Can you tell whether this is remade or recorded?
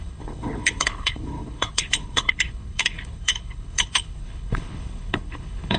remade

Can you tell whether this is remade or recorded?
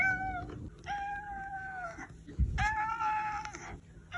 recorded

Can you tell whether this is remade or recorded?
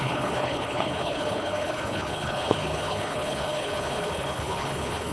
remade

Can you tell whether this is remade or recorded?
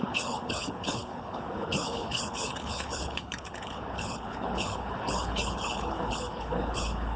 remade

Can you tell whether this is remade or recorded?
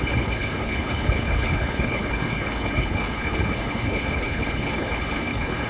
remade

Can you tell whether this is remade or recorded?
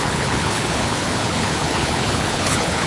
remade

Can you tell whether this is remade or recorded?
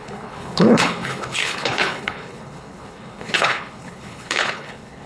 remade